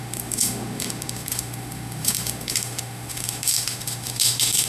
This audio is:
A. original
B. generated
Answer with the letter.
B